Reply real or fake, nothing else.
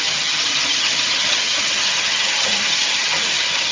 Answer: fake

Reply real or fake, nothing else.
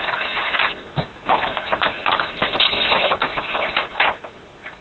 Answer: real